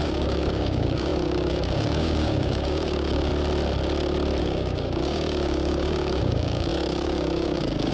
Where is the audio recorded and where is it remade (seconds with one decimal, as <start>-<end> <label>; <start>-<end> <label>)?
0.0-3.3 remade; 3.3-4.4 recorded; 4.4-7.9 remade